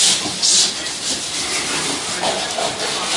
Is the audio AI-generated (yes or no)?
no